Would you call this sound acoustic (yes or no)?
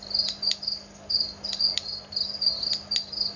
yes